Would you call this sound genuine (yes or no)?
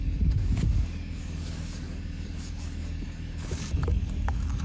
no